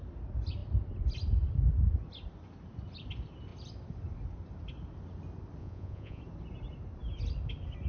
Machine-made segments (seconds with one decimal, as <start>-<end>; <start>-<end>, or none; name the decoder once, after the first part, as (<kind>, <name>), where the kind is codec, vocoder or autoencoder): 5.6-6.2 (vocoder, Vocos)